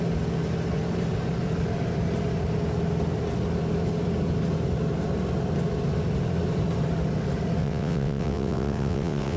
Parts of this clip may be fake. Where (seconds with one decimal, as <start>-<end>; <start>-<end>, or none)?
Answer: 7.6-9.4